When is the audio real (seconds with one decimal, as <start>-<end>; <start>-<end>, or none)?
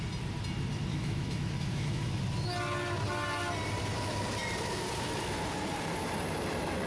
0.0-0.9; 2.2-6.9